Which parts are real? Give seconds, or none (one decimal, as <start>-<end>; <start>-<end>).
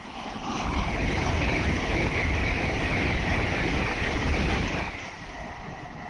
2.2-6.1